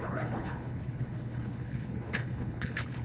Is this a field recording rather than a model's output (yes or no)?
no